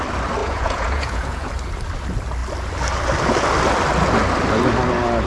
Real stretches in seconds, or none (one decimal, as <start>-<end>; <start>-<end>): 0.0-0.4; 1.5-5.3